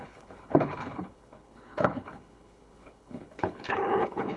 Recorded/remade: remade